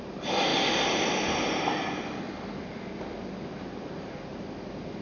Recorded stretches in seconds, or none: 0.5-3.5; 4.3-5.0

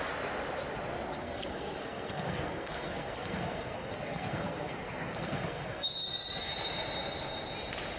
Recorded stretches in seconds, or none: 0.0-1.1; 5.9-8.0

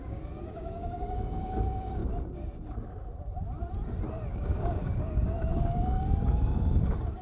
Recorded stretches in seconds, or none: 2.0-4.3

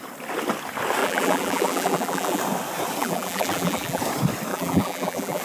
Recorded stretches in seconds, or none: 0.0-1.0; 2.4-3.0; 4.0-4.5